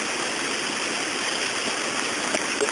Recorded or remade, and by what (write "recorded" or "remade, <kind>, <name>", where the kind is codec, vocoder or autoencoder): recorded